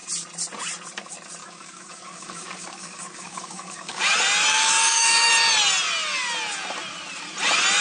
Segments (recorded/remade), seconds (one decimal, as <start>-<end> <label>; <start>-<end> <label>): 0.0-1.4 recorded; 1.4-4.0 remade; 4.0-4.5 recorded; 4.5-5.3 remade; 5.3-7.8 recorded